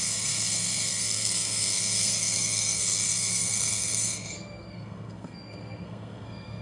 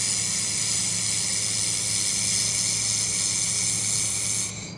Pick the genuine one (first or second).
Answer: second